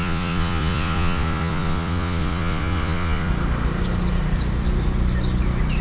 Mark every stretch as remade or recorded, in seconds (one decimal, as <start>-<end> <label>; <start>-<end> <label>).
0.0-3.3 remade; 3.3-5.8 recorded